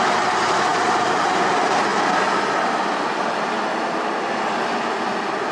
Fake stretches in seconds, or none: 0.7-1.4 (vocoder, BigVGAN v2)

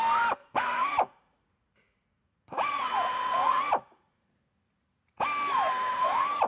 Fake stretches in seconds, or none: 0.4-4.3 (vocoder, Vocos); 5.9-6.5

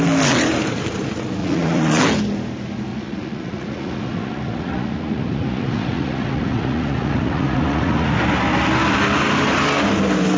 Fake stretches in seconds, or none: 1.4-2.0 (vocoder, Vocos); 2.9-8.1

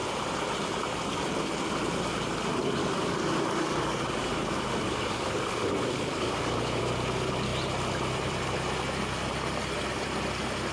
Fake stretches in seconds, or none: 2.8-6.8 (codec, DAC)

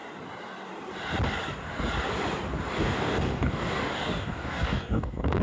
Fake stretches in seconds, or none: 2.8-5.4 (codec, DAC)

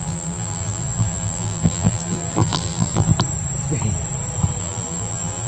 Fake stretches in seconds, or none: 0.0-3.1 (vocoder, BigVGAN v2); 4.6-5.5

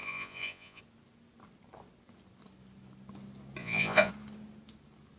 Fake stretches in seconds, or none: 0.0-0.8 (vocoder, Vocos); 3.6-4.1